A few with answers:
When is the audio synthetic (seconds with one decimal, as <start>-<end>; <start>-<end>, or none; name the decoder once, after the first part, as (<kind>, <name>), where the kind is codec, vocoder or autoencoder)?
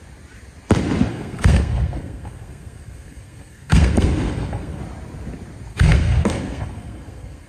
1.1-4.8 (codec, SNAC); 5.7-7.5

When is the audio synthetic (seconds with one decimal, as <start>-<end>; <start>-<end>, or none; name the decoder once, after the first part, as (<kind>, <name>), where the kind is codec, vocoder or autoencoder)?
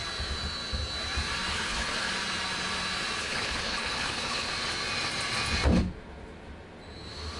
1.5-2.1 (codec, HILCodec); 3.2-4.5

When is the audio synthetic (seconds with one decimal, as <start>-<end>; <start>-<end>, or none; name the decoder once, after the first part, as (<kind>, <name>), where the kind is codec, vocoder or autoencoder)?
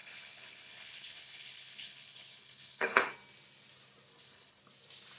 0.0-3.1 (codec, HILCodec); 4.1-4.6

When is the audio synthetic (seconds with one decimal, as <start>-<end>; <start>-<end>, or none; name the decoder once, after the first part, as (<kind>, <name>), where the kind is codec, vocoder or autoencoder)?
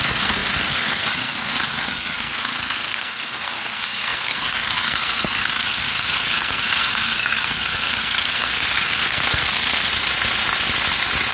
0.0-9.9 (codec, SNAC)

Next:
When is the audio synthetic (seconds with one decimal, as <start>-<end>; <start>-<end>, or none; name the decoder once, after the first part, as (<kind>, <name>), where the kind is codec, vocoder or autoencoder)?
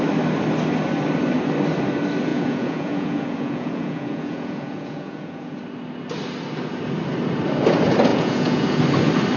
2.3-5.6 (vocoder, Vocos); 8.1-8.8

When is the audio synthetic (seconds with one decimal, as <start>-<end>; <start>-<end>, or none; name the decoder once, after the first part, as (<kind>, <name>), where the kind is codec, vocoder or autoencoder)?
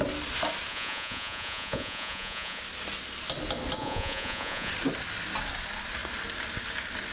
0.7-2.6 (vocoder, Vocos); 3.8-4.7